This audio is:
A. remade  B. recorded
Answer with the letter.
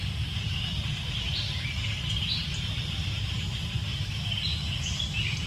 B